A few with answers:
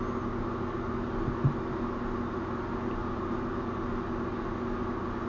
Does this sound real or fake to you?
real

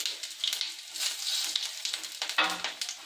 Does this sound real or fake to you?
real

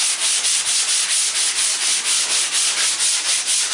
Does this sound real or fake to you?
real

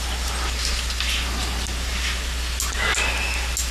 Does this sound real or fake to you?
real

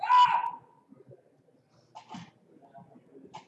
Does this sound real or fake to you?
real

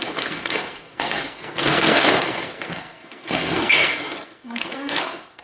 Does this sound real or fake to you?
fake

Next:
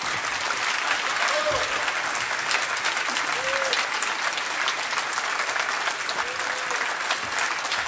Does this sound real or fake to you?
real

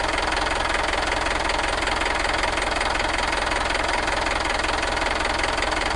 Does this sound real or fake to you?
real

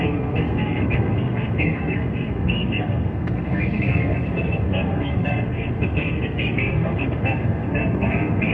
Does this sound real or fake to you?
fake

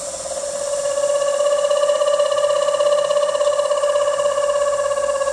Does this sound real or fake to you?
real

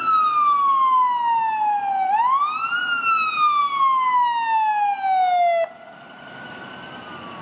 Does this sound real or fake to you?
real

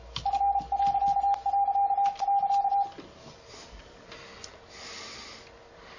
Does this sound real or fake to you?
real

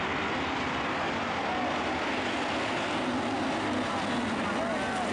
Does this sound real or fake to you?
real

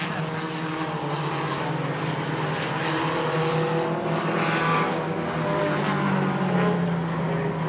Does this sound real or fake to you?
real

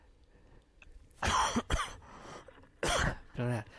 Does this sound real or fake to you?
real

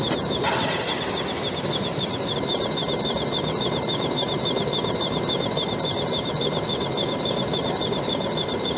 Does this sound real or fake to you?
real